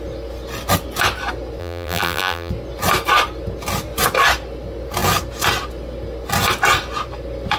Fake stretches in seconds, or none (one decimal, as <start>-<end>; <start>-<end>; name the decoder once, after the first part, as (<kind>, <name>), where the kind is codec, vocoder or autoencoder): 1.6-2.5 (vocoder, BigVGAN v2)

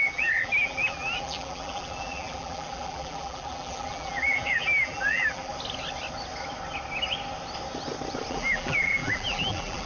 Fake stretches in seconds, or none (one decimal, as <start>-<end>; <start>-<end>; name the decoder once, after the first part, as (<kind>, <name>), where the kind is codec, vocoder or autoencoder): 0.0-5.5 (vocoder, BigVGAN v2); 8.3-9.9